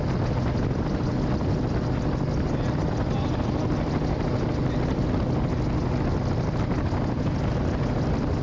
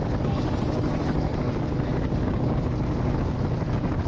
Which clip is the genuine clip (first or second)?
first